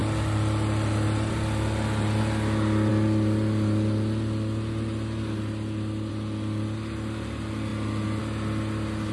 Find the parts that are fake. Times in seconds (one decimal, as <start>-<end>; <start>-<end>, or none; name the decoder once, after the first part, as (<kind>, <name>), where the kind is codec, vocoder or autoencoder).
none